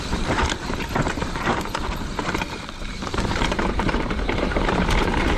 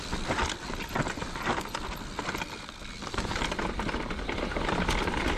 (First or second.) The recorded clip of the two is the second